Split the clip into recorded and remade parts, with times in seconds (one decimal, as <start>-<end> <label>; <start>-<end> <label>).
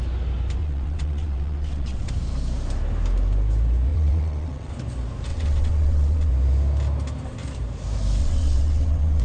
0.0-0.6 recorded; 0.6-2.1 remade; 2.1-3.9 recorded; 3.9-4.7 remade; 4.7-5.3 recorded; 5.3-6.3 remade; 6.3-8.2 recorded; 8.2-9.2 remade